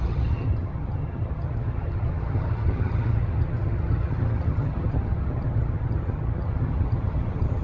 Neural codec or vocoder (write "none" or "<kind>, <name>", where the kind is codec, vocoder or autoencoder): vocoder, HiFi-GAN